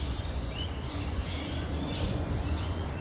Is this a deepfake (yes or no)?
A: yes